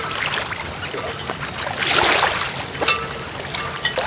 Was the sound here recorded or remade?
recorded